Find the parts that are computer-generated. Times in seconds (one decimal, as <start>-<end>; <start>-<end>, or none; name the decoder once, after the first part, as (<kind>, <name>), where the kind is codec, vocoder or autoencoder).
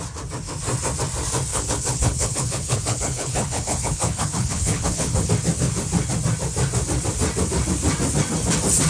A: 1.5-5.3 (codec, HILCodec)